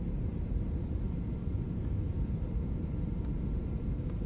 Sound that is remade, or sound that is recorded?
remade